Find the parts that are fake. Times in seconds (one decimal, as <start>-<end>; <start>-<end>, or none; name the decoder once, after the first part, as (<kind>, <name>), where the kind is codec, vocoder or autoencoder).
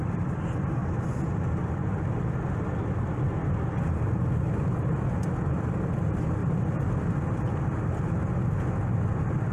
6.4-6.9 (vocoder, BigVGAN v2)